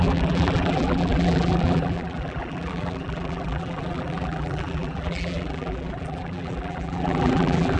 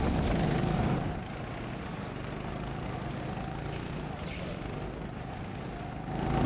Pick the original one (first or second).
second